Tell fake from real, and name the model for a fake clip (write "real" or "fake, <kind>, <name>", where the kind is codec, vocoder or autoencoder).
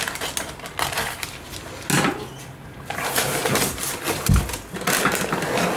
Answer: real